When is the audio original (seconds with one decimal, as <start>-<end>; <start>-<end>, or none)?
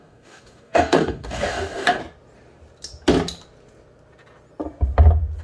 2.0-5.4